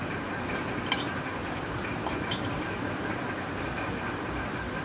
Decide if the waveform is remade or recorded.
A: recorded